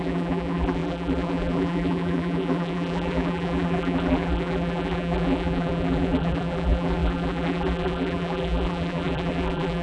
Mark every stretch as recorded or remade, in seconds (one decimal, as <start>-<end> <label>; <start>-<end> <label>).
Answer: 0.0-9.8 remade